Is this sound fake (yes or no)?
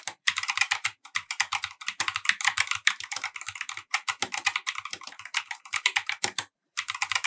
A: yes